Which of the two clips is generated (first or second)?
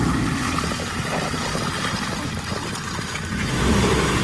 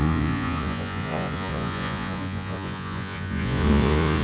second